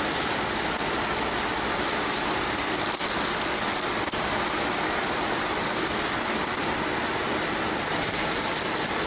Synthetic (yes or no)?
yes